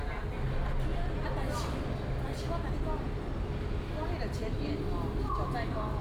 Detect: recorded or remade recorded